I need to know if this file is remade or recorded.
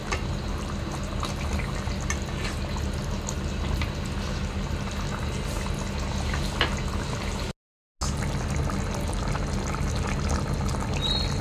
recorded